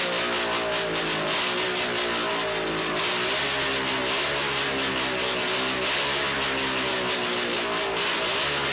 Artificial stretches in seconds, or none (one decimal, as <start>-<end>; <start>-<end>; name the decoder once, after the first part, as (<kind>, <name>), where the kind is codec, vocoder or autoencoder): none